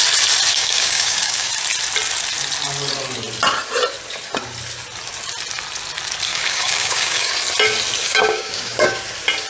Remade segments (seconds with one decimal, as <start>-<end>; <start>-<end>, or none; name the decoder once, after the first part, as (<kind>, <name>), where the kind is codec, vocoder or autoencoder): 0.5-1.5 (codec, DAC); 6.3-7.3; 8.0-9.0